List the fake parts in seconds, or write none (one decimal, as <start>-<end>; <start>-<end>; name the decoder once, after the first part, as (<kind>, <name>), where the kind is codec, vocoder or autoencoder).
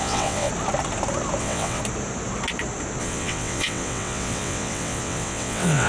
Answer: 0.0-0.5 (vocoder, WaveNeXt); 1.4-1.8; 3.0-5.9